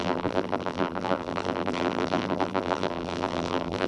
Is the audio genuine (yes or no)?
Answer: no